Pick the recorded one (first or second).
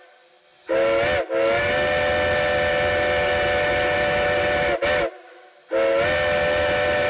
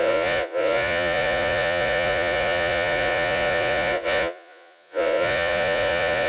first